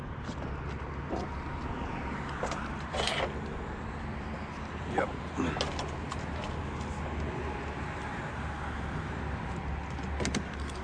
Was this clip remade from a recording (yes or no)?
no